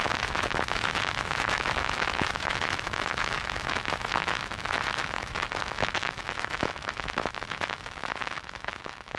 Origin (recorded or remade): remade